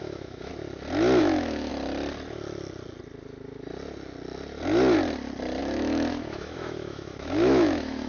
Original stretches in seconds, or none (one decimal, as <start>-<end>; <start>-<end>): 0.5-1.2; 1.7-5.6